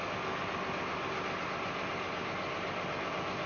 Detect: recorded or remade recorded